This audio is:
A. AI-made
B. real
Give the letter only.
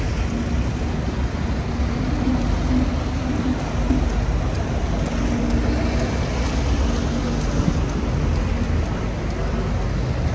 B